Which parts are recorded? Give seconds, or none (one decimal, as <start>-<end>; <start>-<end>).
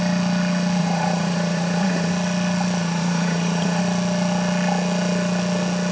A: 0.0-0.8; 2.1-2.8; 3.8-5.9